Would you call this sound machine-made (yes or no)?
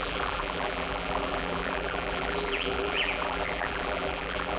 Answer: yes